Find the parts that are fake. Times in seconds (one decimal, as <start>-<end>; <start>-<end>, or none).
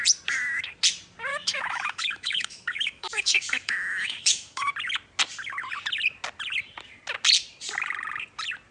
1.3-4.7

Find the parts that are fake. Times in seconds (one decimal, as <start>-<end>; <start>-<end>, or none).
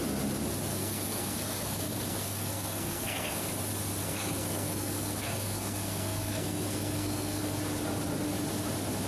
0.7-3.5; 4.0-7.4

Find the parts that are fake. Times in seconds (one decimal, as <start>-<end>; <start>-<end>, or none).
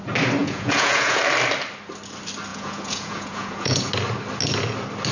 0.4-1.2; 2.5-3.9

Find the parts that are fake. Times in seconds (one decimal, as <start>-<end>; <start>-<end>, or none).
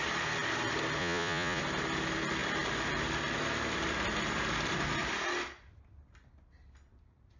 1.0-1.6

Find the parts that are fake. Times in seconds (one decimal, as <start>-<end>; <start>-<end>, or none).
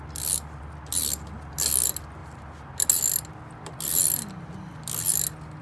none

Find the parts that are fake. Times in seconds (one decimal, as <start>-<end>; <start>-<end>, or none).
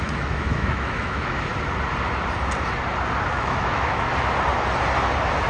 0.0-1.5; 3.3-4.1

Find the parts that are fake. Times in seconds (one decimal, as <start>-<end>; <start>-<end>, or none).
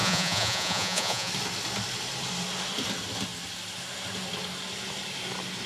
0.0-1.3